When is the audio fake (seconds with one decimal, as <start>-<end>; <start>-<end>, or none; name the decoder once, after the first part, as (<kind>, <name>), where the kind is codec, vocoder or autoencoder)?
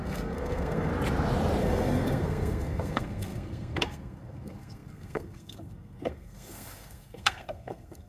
0.0-0.9 (codec, SNAC); 1.6-8.1